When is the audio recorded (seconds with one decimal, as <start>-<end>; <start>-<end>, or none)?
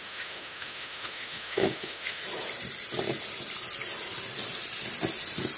2.2-5.6